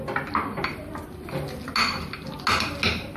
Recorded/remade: recorded